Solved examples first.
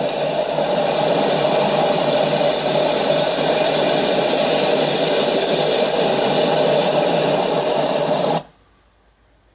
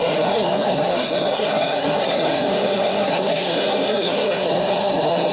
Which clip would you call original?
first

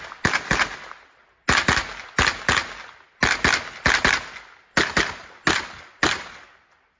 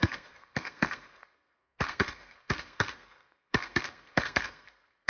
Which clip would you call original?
first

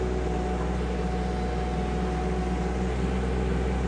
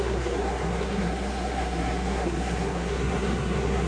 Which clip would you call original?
first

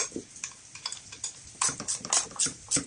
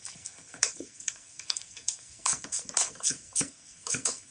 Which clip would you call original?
first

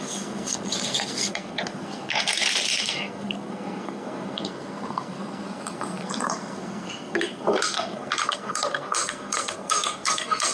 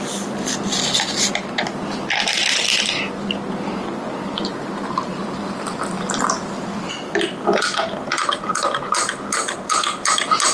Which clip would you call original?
second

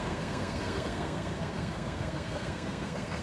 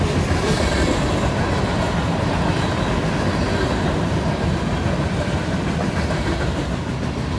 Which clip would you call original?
second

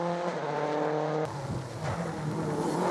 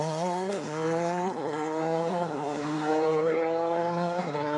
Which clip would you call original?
first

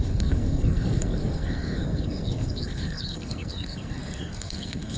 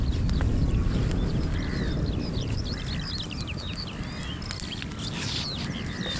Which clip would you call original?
second